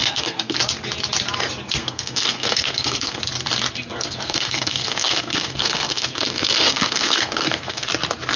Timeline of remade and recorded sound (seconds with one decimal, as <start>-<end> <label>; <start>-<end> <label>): 0.0-0.6 remade; 0.6-1.8 recorded; 1.8-3.2 remade; 3.2-3.9 recorded; 3.9-7.9 remade; 7.9-8.4 recorded